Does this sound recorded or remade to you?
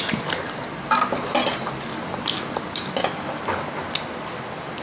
recorded